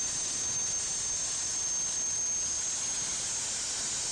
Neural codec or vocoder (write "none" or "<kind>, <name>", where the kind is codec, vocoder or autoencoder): none